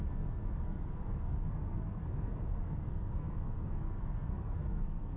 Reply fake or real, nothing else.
fake